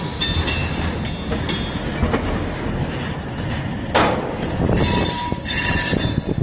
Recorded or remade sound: recorded